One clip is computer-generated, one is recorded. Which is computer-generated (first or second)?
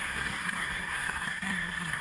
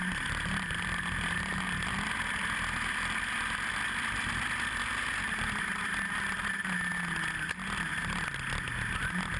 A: first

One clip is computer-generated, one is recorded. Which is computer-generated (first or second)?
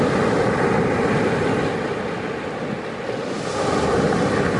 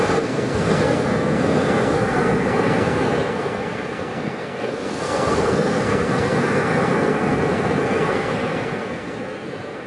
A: second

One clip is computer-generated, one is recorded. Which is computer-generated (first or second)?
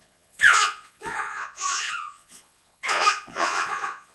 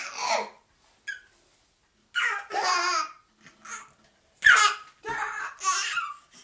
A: first